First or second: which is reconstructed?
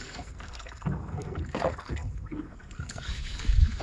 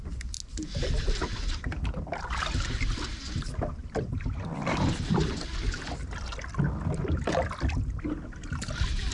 first